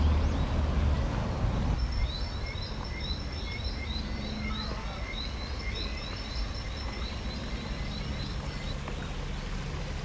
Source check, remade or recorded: recorded